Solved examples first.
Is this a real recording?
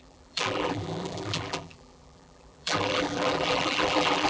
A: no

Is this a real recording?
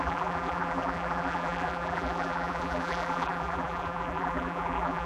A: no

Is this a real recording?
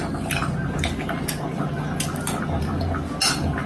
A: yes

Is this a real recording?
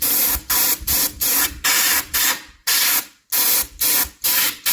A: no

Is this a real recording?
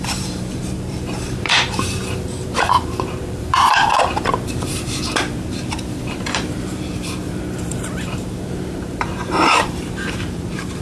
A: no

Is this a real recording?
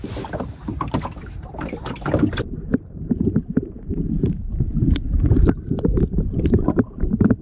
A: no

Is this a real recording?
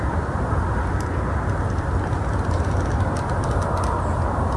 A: yes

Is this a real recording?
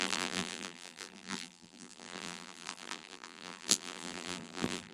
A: no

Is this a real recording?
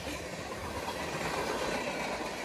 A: yes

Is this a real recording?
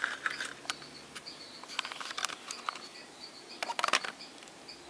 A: yes